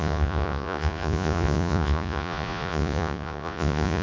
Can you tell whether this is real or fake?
fake